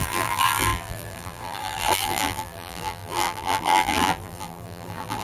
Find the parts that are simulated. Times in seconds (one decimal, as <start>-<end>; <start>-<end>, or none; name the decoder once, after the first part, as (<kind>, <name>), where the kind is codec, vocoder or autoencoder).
0.0-5.2 (vocoder, BigVGAN v2)